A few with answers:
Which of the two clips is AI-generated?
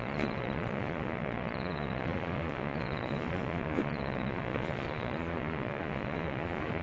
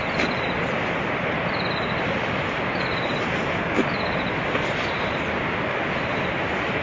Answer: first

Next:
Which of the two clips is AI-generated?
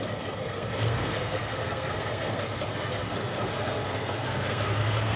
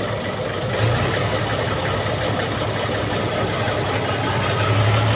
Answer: first